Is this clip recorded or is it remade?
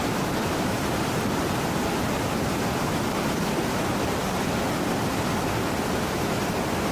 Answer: recorded